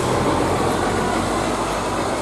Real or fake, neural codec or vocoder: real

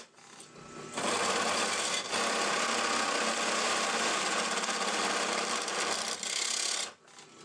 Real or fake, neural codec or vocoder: real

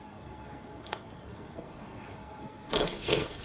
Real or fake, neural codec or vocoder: fake, codec, SNAC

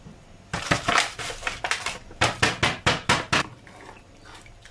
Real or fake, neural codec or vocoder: real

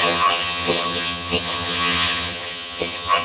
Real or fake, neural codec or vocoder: fake, vocoder, HiFi-GAN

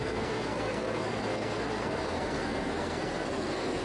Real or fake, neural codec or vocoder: fake, codec, SNAC